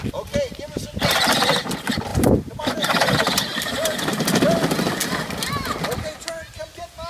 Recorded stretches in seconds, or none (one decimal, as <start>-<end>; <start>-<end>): 0.0-2.1; 4.1-7.1